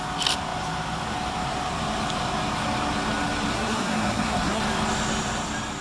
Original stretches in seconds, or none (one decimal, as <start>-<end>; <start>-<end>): 0.0-3.5; 4.6-5.8